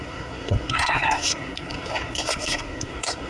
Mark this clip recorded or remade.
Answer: remade